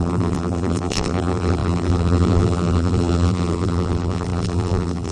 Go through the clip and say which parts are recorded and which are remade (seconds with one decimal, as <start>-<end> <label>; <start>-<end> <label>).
0.0-5.1 remade